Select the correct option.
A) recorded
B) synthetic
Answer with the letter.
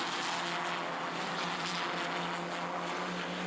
A